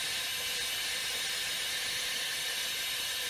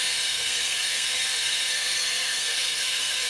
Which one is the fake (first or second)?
second